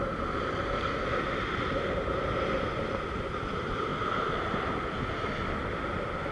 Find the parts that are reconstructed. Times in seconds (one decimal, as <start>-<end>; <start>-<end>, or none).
3.9-4.6